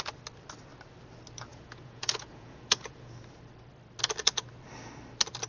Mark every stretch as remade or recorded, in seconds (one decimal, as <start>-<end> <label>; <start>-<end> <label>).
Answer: 0.0-1.5 recorded; 1.5-3.1 remade; 3.1-5.5 recorded